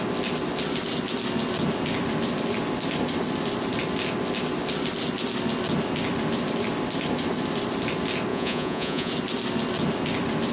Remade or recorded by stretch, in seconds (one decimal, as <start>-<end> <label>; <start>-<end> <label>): 0.0-8.3 recorded; 8.3-9.1 remade; 9.1-10.5 recorded